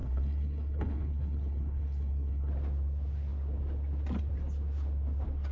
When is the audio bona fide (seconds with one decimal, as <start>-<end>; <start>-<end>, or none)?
2.5-5.5